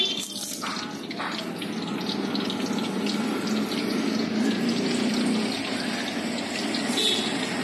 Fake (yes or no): no